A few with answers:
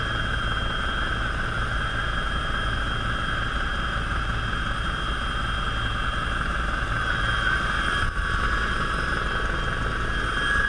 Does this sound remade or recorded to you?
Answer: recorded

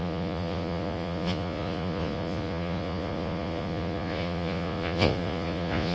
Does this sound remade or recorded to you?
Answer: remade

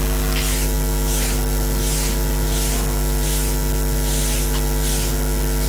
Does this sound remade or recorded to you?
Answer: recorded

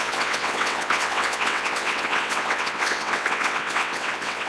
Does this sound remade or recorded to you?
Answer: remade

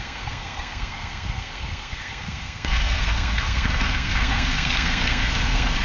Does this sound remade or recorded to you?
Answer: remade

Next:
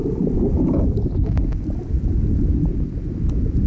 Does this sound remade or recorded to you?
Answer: recorded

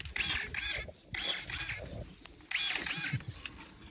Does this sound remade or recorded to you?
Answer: recorded